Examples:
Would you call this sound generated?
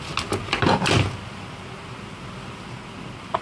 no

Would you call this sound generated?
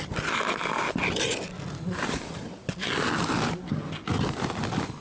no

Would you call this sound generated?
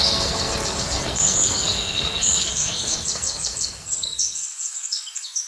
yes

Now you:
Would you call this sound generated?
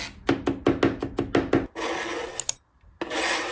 no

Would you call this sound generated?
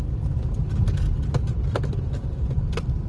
no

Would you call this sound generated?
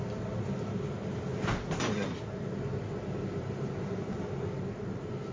no